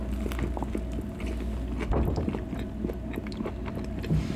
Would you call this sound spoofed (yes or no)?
no